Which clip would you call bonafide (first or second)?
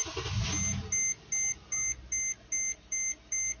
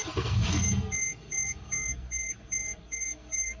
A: first